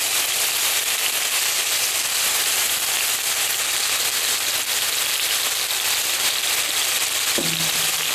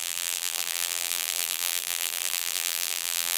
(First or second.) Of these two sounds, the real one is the first